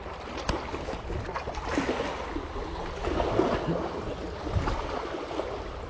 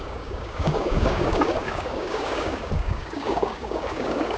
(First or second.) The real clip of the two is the first